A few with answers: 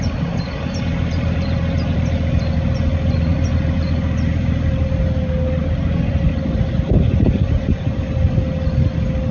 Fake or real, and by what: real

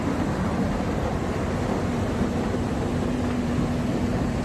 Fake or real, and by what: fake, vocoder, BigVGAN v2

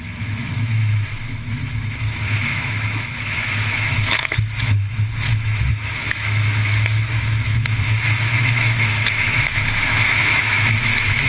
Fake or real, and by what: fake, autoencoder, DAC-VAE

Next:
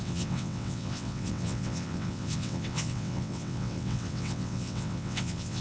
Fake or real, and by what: fake, vocoder, WaveNeXt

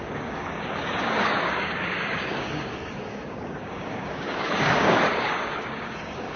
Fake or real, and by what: fake, codec, DAC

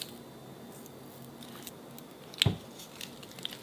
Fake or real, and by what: real